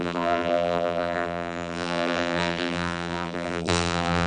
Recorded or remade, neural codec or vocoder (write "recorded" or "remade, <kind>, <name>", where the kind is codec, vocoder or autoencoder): remade, vocoder, BigVGAN v2